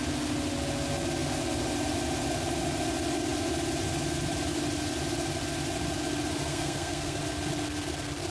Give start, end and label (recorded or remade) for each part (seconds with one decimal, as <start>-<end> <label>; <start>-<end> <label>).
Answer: 0.0-6.5 recorded; 6.5-7.2 remade; 7.2-8.3 recorded